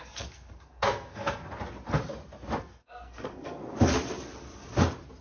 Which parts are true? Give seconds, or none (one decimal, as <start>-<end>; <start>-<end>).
1.4-2.6; 3.6-5.2